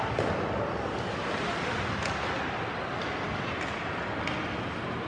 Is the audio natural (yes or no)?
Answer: yes